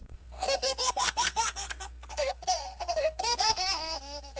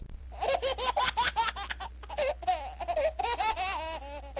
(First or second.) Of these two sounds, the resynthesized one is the first